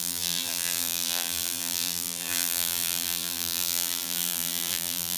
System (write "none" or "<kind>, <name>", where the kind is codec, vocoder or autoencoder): vocoder, BigVGAN v2